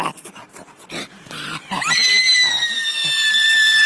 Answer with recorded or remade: remade